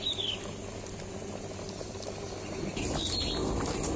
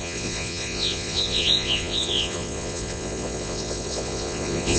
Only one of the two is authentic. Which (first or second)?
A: first